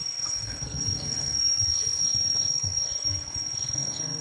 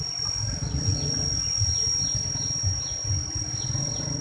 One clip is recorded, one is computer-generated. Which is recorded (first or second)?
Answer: second